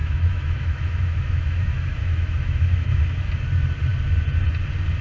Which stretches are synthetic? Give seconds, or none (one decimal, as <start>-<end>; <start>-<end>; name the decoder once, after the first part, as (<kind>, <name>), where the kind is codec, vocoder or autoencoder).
0.0-3.0 (autoencoder, DAC-VAE)